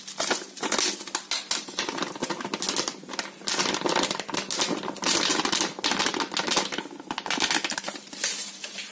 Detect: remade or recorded recorded